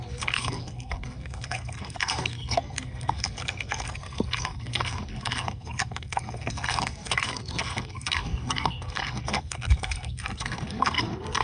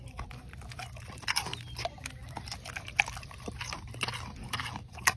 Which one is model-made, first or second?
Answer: first